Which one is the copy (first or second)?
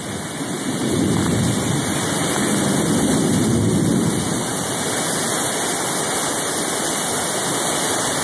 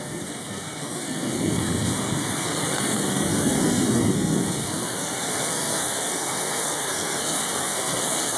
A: second